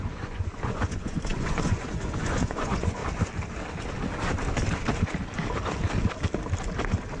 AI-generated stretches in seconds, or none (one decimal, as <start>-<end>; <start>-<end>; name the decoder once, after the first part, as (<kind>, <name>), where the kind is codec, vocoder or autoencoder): 0.0-3.0 (vocoder, Vocos)